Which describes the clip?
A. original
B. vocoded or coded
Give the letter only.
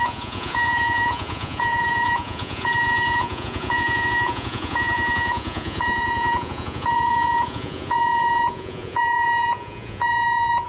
B